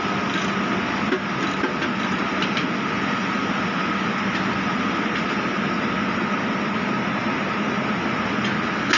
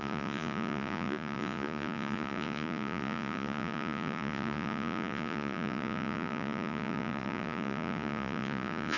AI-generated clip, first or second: second